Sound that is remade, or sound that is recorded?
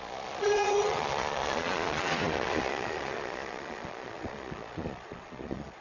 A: remade